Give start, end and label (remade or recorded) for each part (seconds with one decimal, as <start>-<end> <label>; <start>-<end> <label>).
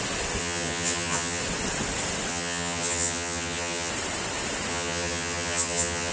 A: 0.0-0.4 recorded; 0.4-1.4 remade; 1.4-2.3 recorded; 2.3-3.9 remade; 3.9-4.7 recorded; 4.7-6.1 remade